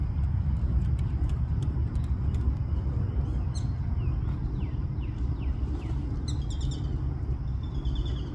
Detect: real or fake real